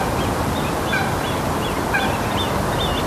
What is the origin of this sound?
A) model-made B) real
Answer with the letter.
B